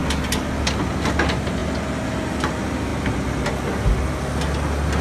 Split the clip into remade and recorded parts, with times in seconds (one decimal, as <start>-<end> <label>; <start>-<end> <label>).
0.0-5.0 recorded